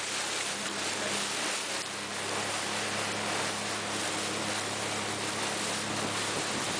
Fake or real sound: real